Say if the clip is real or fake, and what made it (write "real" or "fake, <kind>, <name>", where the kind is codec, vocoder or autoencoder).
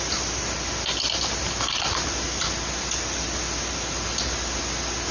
real